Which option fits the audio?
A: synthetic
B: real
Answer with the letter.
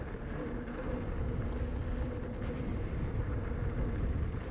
B